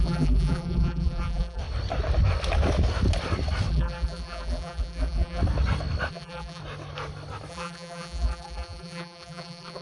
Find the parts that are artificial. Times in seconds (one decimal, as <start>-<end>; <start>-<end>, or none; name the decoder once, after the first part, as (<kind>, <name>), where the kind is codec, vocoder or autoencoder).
0.0-1.6 (vocoder, BigVGAN v2); 3.7-5.4; 6.1-6.6; 7.5-9.8